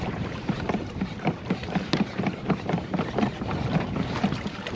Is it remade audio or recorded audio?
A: remade